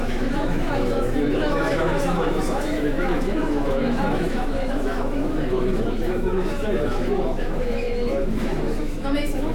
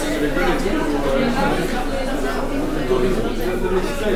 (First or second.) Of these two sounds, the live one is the second